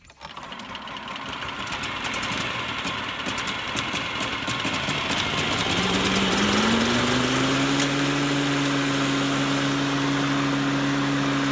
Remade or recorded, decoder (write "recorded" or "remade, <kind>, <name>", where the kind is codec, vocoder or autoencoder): recorded